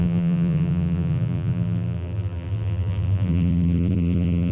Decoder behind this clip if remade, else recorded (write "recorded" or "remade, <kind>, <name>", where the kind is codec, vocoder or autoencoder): remade, vocoder, BigVGAN v2